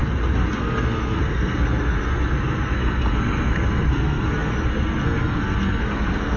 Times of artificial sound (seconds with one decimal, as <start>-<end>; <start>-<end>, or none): 0.6-6.4